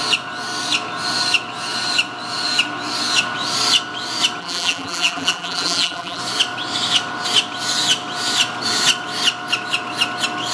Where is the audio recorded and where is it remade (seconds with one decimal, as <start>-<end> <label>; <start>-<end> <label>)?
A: 0.0-4.4 recorded; 4.4-6.2 remade; 6.2-10.5 recorded